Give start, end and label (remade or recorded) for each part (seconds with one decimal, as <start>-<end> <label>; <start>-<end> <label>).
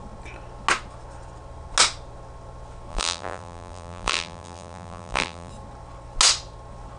0.0-2.9 recorded; 2.9-5.5 remade; 5.5-7.0 recorded